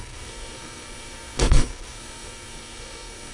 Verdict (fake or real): fake